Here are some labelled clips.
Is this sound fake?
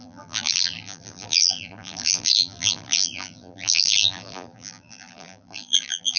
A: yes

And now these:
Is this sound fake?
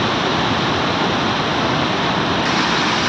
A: yes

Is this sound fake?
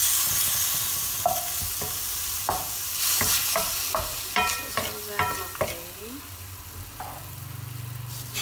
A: no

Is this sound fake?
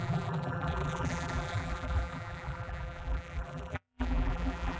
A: yes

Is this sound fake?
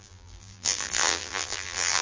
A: yes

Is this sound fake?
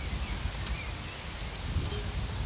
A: no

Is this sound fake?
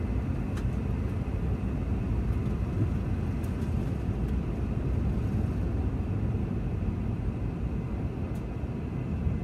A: no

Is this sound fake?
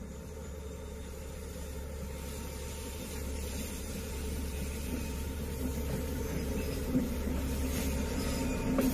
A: yes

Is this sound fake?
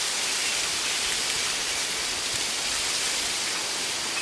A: no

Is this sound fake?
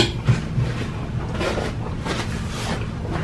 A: no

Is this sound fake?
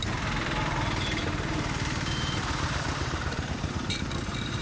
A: yes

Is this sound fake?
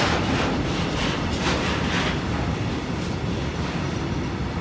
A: no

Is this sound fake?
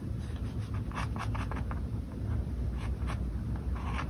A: no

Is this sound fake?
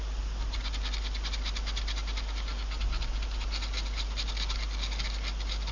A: no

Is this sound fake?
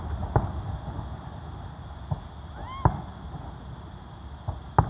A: no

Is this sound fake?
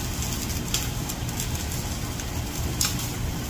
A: no